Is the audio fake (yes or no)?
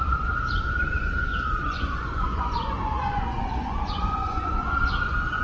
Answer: yes